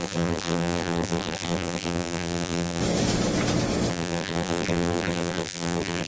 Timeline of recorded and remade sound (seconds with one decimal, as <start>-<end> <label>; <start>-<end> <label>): 0.0-2.8 remade; 2.8-3.9 recorded; 3.9-6.1 remade